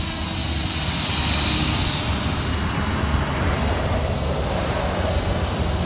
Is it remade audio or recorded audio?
recorded